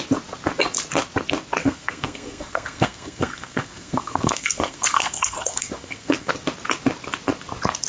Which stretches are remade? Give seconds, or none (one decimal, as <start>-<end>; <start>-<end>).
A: 1.6-6.3